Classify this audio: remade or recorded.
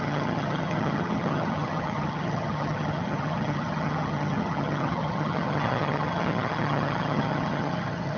remade